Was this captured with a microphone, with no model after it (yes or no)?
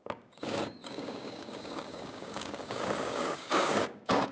no